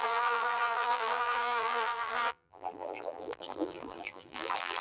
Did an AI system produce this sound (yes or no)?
yes